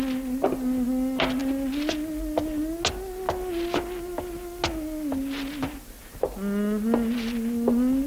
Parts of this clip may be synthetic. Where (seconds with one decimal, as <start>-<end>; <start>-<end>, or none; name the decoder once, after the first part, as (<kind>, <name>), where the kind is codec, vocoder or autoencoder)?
none